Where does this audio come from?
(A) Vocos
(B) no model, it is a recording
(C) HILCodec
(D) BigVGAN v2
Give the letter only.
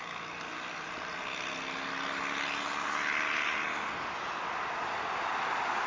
B